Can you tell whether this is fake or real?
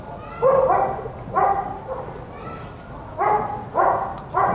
real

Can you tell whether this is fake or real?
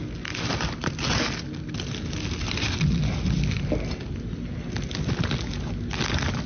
real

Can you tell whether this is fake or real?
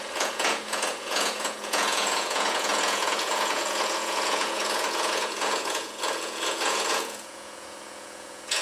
fake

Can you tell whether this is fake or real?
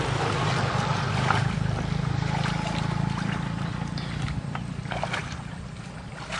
real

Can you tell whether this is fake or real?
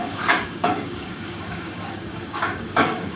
fake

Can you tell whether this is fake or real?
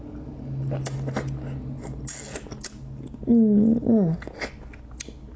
real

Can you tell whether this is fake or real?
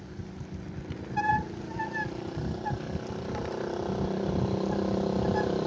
real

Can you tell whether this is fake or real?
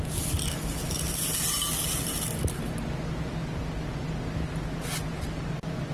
real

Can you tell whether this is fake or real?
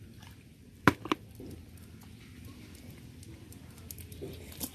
real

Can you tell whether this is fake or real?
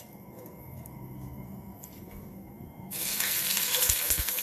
fake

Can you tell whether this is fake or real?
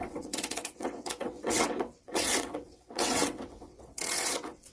fake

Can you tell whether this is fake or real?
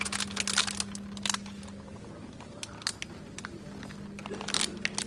real